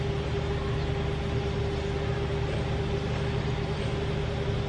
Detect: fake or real real